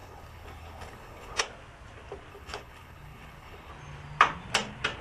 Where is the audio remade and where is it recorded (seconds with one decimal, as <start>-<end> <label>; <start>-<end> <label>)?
0.0-1.4 remade; 1.4-2.3 recorded; 2.3-3.7 remade; 3.7-5.0 recorded

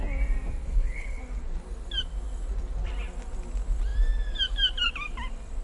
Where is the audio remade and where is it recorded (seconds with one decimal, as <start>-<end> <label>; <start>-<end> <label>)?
0.0-0.6 recorded; 0.6-1.2 remade; 1.2-5.6 recorded

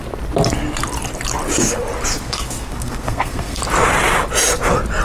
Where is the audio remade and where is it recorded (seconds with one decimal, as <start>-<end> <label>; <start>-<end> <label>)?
0.0-2.1 recorded; 2.1-3.6 remade; 3.6-5.0 recorded

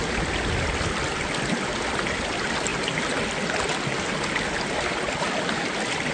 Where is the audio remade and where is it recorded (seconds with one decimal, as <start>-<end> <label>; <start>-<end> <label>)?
0.0-6.1 recorded

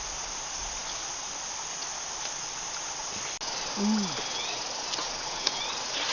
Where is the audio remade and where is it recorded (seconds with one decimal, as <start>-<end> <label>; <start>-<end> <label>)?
0.0-5.0 recorded; 5.0-5.6 remade; 5.6-6.1 recorded